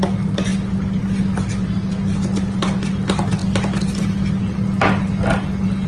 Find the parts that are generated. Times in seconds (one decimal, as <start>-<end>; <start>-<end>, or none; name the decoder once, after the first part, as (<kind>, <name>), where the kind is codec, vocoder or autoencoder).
none